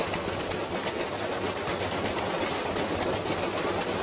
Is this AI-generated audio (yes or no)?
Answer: no